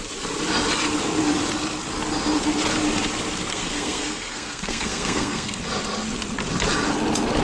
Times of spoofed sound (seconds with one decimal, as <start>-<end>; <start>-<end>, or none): 3.5-5.6